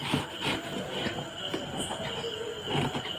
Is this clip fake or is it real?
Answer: real